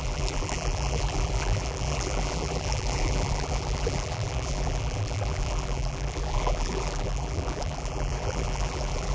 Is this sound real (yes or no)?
no